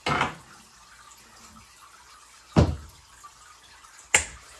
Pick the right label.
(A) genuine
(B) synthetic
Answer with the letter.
A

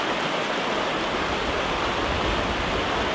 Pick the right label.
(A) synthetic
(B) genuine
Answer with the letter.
B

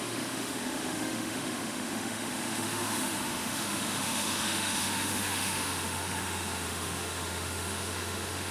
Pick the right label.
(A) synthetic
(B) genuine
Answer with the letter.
A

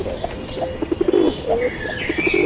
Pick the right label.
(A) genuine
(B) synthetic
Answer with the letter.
A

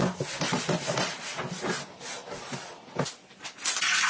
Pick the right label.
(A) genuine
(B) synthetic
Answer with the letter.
A